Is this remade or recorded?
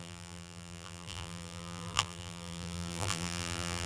remade